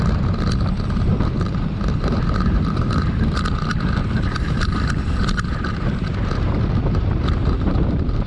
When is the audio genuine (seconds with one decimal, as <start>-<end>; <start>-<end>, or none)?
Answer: 0.0-1.1; 3.2-4.0